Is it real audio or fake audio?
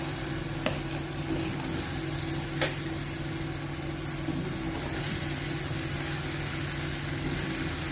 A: real